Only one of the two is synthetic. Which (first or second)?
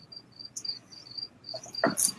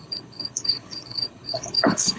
second